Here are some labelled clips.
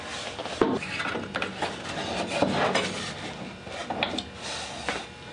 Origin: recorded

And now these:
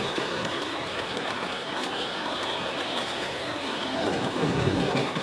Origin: remade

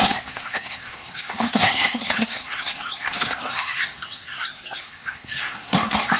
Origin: remade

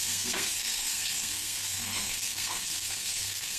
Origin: remade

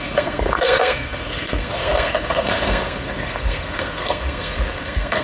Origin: remade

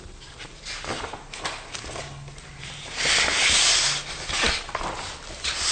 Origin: recorded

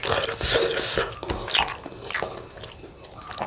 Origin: recorded